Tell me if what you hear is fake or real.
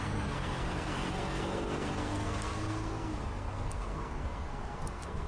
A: fake